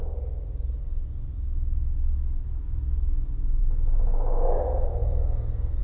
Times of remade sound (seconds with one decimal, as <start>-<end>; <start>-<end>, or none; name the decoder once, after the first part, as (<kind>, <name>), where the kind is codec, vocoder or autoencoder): 5.0-5.8 (codec, DAC)